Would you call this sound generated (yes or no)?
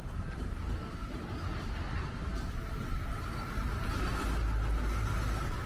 no